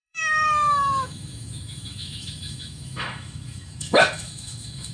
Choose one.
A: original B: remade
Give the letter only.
B